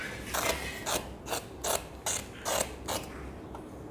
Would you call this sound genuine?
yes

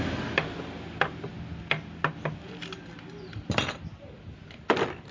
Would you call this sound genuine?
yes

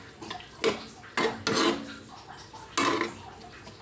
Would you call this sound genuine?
yes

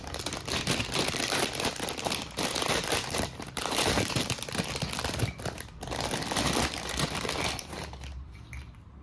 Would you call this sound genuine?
no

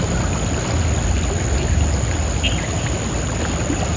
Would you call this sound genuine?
yes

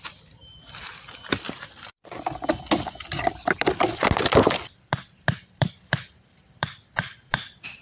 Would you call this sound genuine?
no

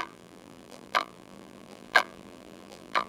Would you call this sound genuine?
no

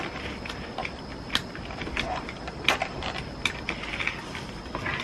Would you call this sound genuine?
no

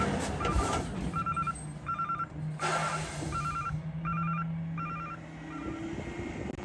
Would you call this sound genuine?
yes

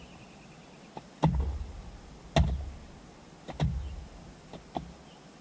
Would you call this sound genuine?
yes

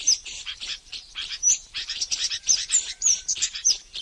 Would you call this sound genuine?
no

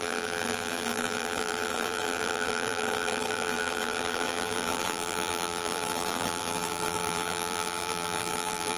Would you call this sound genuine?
no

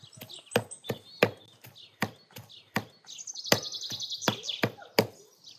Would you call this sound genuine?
yes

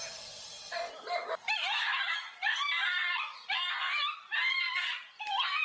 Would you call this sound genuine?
yes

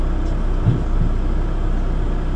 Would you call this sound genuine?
yes